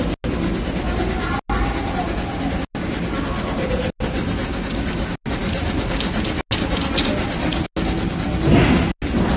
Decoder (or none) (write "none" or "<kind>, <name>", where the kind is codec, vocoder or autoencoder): none